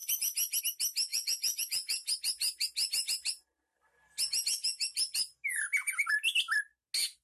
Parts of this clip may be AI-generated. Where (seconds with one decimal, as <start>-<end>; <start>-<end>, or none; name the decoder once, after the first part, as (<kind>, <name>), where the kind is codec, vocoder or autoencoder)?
1.1-2.1 (vocoder, Vocos)